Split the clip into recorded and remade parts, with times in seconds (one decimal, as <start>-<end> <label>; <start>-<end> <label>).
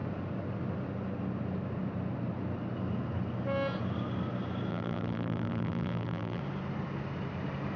0.0-4.7 recorded; 4.7-6.4 remade; 6.4-7.8 recorded